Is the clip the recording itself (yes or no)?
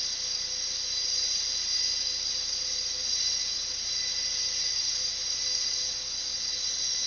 yes